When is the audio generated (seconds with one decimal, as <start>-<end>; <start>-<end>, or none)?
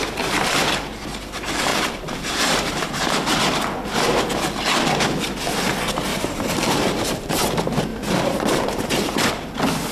1.7-3.4; 6.1-7.3; 7.9-9.3